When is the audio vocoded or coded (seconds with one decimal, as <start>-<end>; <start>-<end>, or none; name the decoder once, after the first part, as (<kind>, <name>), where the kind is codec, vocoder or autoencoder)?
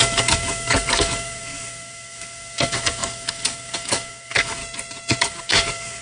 0.0-4.6 (codec, DAC); 5.2-6.0